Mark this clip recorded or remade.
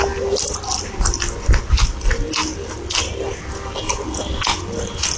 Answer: recorded